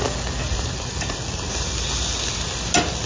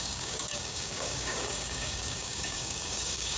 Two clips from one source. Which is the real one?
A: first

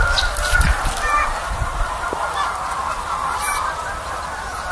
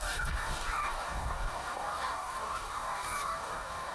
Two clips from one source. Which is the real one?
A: first